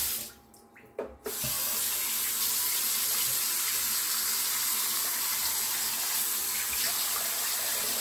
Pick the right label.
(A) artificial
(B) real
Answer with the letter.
B